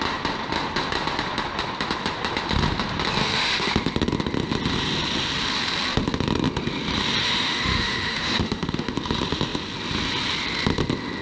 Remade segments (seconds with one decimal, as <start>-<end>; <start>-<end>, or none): 3.2-3.7; 7.2-8.9